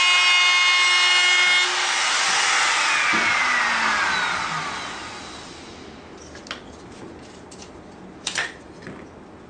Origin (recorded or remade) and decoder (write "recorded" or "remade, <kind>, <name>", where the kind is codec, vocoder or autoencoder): recorded